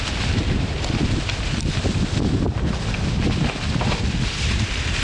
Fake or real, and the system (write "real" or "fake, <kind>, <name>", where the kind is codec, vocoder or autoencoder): real